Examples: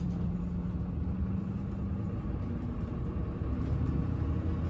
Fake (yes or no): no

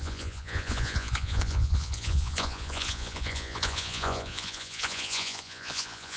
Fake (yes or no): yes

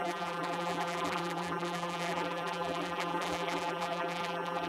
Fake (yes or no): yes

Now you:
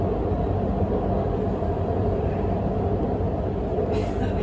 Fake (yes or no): no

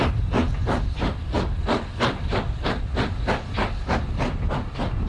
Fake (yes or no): no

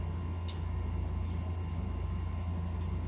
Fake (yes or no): no